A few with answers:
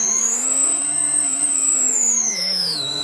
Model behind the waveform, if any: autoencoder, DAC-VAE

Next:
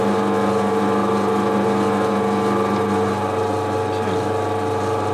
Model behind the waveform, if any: none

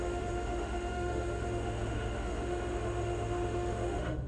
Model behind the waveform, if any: autoencoder, DAC-VAE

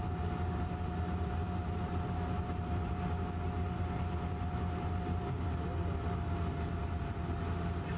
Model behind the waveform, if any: none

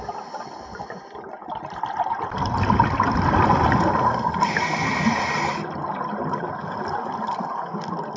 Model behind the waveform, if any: none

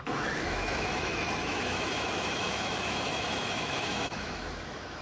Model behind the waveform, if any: autoencoder, DAC-VAE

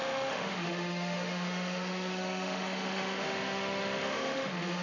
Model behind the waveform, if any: autoencoder, DAC-VAE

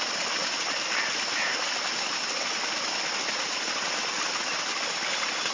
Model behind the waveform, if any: none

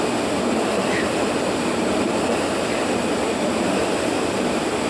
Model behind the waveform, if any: none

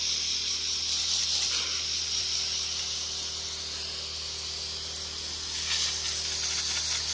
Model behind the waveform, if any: none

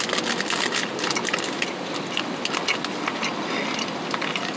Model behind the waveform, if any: none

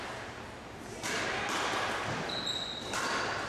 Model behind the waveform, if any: none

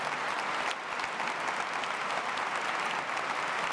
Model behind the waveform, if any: none